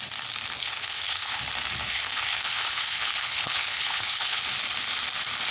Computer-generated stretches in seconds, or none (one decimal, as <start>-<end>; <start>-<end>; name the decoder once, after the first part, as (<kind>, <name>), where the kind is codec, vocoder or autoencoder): 0.6-1.4 (codec, HILCodec); 1.9-4.4